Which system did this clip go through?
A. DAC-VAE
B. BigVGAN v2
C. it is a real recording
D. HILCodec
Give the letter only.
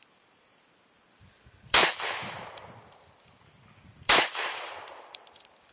B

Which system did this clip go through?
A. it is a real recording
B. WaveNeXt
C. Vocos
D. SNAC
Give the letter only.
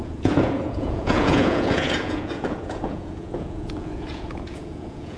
C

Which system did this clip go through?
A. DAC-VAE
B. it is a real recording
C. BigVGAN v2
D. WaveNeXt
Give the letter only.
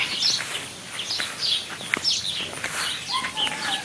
B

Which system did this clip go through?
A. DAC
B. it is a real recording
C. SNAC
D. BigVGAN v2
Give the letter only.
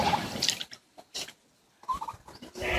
B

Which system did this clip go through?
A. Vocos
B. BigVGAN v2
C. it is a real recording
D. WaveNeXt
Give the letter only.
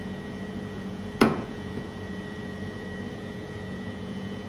A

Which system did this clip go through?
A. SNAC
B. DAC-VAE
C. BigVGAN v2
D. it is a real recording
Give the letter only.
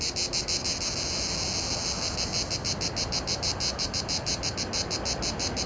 D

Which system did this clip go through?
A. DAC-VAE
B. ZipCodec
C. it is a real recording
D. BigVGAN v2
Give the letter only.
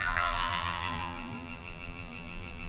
D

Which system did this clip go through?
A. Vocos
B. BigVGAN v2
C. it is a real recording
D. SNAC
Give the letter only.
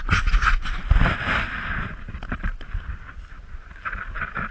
C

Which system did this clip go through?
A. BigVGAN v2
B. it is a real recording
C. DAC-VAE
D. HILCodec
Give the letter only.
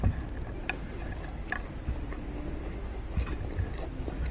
B